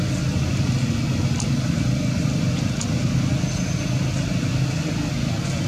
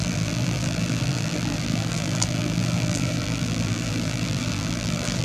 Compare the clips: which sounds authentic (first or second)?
first